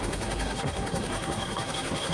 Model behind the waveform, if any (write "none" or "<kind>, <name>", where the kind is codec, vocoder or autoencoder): codec, SNAC